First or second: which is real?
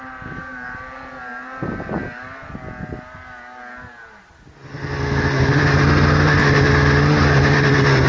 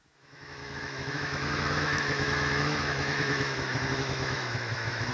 first